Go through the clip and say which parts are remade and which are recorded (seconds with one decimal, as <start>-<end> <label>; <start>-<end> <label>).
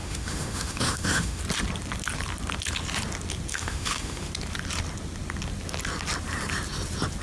0.0-1.4 remade; 1.4-3.5 recorded; 3.5-4.3 remade; 4.3-7.2 recorded